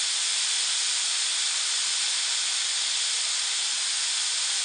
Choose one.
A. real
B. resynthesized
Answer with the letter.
A